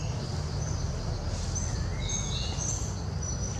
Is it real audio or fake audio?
real